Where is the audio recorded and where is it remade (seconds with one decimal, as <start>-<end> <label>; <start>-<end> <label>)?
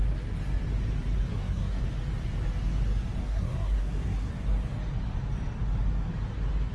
0.0-1.3 recorded; 1.3-1.8 remade; 1.8-3.2 recorded; 3.2-4.3 remade; 4.3-6.7 recorded